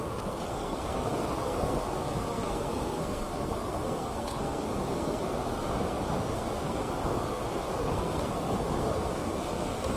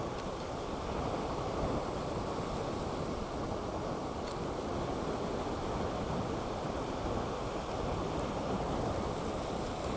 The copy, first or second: first